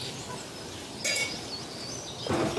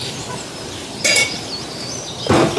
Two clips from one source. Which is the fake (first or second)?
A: second